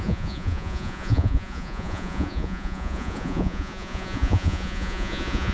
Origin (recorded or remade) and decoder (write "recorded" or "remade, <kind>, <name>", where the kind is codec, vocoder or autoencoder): remade, vocoder, Vocos